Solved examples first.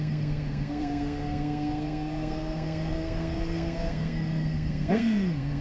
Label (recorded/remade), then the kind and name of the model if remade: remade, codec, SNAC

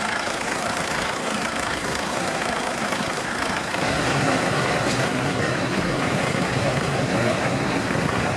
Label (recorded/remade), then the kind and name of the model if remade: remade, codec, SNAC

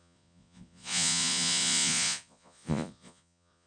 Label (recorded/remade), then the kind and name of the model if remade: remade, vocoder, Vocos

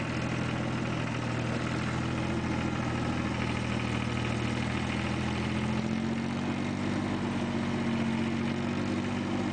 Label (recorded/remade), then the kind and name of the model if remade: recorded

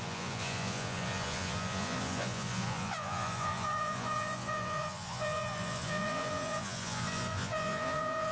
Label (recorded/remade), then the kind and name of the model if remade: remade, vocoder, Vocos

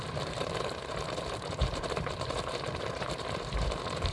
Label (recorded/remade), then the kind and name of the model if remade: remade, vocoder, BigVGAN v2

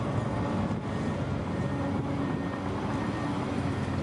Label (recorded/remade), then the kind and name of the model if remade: recorded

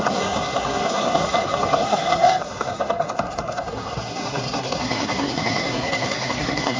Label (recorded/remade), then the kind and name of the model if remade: remade, codec, SNAC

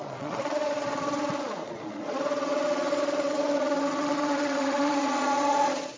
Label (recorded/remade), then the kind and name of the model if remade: remade, vocoder, Vocos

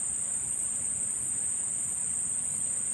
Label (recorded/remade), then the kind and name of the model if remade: recorded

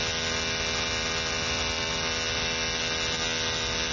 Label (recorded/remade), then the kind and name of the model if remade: recorded